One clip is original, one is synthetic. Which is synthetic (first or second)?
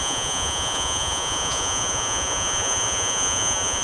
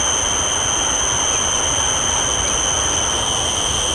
first